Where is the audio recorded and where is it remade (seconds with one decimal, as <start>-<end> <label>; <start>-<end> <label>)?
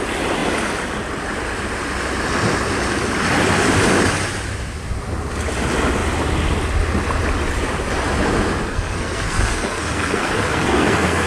0.0-8.7 recorded; 8.7-11.3 remade